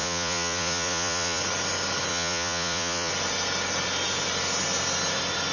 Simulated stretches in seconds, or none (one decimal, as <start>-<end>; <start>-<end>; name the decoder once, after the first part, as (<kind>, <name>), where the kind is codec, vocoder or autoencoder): 0.0-1.4 (vocoder, Vocos); 2.1-3.1